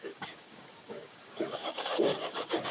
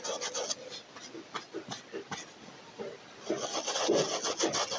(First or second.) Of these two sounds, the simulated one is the first